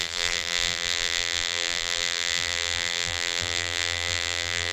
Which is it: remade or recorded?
remade